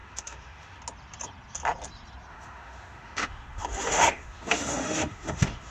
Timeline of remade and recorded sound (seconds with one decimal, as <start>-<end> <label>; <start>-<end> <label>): 0.0-0.8 remade; 0.8-2.3 recorded; 2.3-5.7 remade